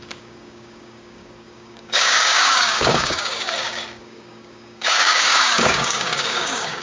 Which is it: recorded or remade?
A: remade